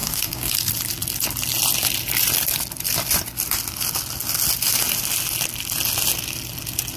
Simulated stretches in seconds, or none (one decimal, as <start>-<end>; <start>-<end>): 0.0-0.5